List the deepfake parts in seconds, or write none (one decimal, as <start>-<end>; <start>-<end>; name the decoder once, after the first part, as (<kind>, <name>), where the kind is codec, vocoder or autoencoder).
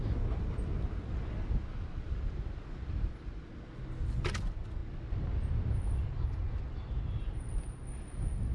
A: none